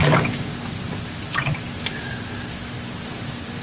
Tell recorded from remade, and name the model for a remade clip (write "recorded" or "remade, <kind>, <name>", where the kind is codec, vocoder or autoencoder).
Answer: recorded